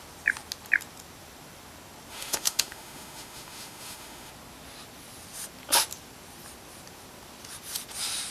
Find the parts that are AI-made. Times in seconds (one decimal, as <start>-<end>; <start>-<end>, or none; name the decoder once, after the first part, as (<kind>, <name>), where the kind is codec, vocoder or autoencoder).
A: 2.1-4.3 (autoencoder, DAC-VAE)